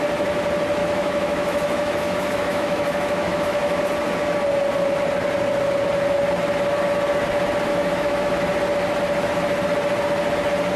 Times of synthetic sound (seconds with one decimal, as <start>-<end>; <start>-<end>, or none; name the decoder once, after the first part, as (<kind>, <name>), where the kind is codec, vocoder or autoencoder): 0.8-3.8 (autoencoder, DAC-VAE); 7.7-8.4